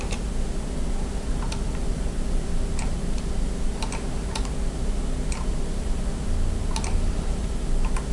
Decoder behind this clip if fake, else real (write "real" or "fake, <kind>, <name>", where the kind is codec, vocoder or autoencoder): real